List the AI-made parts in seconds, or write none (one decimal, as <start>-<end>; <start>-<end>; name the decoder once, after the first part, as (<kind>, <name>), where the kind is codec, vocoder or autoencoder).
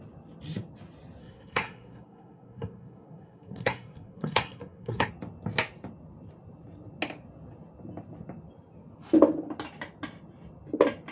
1.2-5.1 (codec, SNAC)